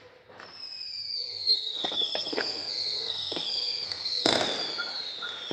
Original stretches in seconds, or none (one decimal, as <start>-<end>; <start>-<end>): 0.0-1.1; 4.4-5.5